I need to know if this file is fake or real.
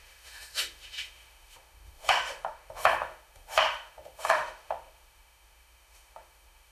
fake